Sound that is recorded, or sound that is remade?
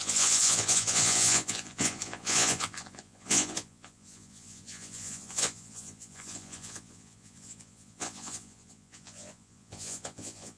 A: remade